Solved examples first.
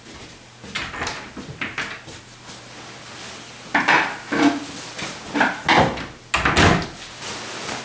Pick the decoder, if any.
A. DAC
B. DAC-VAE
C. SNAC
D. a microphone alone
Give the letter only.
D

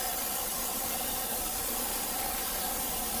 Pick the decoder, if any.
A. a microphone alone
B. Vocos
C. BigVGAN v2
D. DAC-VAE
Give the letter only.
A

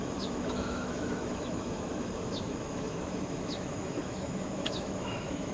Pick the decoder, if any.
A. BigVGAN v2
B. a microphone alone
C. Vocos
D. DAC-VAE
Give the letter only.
D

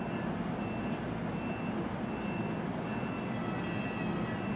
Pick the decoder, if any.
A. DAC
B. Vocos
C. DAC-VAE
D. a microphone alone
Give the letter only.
D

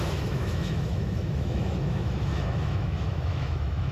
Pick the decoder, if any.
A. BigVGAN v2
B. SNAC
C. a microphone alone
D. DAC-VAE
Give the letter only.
D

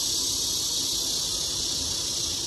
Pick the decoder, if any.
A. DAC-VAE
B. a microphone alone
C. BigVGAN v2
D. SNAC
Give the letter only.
B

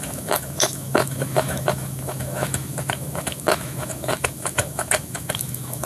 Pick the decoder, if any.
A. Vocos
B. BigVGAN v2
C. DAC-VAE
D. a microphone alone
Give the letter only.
C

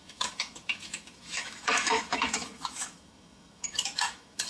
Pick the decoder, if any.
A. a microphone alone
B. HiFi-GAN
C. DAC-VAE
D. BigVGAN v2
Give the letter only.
C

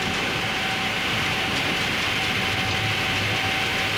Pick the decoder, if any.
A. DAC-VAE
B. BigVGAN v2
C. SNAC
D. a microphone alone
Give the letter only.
D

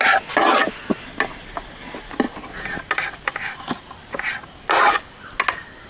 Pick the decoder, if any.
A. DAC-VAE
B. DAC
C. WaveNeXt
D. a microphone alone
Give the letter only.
D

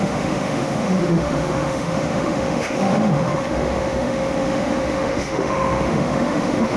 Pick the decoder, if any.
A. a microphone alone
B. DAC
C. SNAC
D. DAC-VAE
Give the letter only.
D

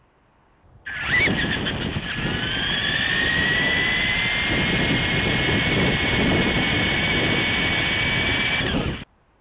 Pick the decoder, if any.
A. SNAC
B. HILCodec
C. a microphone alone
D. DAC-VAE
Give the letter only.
C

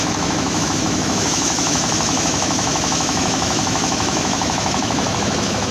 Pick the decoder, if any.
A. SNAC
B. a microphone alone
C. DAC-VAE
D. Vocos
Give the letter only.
C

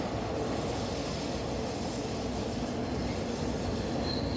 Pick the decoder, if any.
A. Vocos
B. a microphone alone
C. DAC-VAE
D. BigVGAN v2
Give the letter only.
B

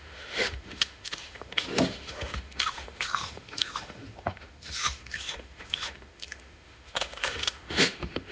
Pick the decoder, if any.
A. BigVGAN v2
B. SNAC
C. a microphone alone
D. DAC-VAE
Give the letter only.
D